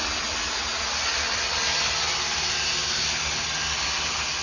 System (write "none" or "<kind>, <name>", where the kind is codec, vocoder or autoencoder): none